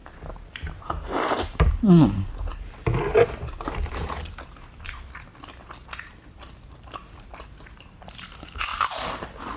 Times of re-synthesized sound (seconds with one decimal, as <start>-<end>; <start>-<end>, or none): 0.8-5.3; 6.3-9.6